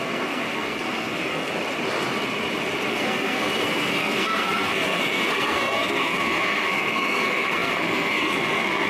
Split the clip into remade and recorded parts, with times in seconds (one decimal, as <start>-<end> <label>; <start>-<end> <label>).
0.0-1.5 remade; 1.5-2.9 recorded; 2.9-8.9 remade